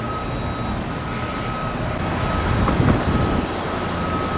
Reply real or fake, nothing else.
real